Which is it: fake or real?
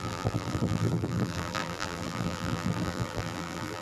fake